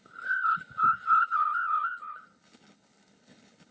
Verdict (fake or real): fake